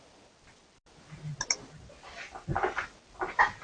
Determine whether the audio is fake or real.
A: real